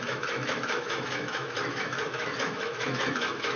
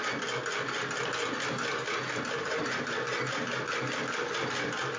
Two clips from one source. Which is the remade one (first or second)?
first